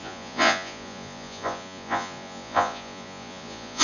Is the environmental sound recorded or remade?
remade